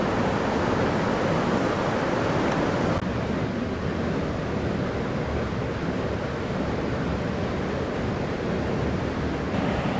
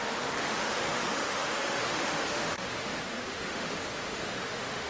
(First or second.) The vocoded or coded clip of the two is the second